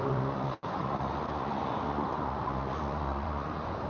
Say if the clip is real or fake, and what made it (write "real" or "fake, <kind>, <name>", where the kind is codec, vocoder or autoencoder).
fake, vocoder, Vocos